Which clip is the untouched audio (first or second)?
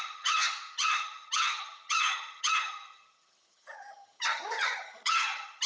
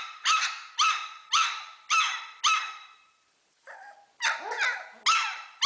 second